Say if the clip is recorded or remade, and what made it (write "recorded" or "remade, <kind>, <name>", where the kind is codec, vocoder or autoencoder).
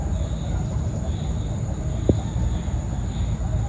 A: recorded